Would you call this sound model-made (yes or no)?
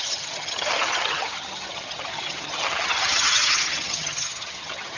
yes